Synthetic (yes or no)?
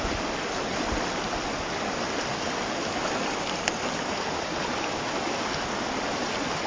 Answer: no